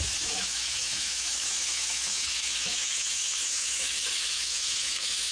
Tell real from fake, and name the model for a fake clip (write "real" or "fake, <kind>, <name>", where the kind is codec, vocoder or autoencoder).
fake, autoencoder, DAC-VAE